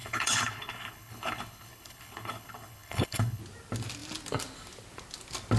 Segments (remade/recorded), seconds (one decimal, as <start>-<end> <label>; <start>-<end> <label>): 0.0-3.4 remade; 3.4-5.6 recorded